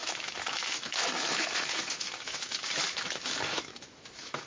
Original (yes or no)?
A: no